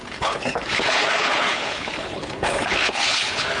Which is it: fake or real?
fake